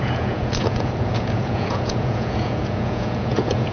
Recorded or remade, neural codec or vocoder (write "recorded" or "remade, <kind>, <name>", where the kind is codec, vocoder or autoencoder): remade, vocoder, Vocos